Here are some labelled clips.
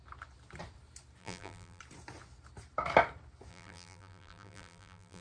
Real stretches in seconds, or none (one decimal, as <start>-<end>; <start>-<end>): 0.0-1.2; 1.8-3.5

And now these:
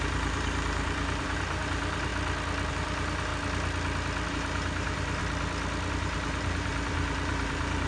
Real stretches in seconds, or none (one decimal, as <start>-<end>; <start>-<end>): 2.1-2.7; 3.3-4.3; 5.2-5.9

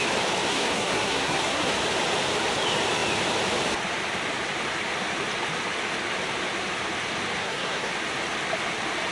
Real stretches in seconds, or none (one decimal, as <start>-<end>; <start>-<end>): 0.0-0.5; 1.7-7.4; 7.9-9.1

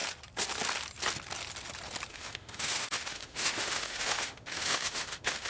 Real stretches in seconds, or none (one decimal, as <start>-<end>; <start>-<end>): 0.0-2.1

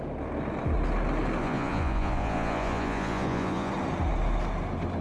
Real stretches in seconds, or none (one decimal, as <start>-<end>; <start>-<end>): 0.0-1.4; 3.7-5.0

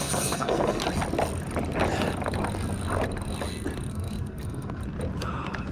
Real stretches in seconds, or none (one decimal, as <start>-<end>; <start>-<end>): 0.8-3.9; 4.8-5.7